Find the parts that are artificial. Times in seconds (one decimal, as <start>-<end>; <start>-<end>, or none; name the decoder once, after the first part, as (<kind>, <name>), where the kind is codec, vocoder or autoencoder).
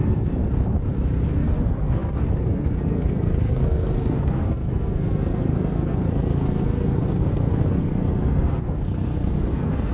0.0-0.4 (codec, SNAC); 1.3-9.9